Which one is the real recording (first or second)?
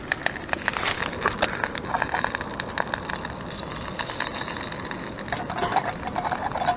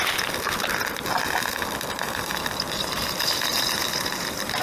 first